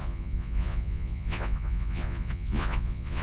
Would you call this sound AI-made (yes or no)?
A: yes